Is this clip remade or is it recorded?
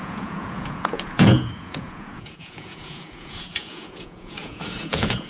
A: remade